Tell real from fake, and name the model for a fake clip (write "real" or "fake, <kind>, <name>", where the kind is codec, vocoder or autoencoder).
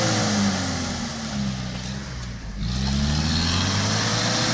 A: real